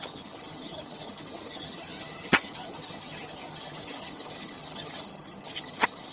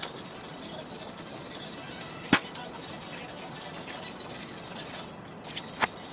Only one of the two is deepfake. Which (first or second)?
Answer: first